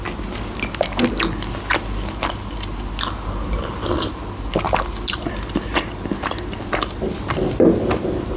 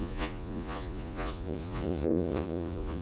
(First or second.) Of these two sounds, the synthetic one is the second